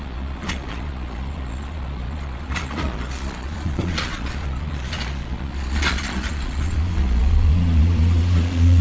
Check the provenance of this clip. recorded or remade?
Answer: remade